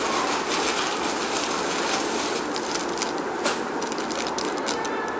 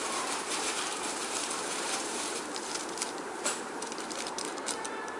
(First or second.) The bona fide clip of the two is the first